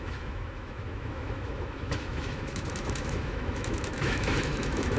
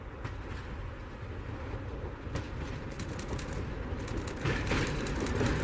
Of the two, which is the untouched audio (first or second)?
second